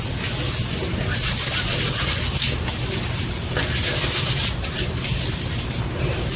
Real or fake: real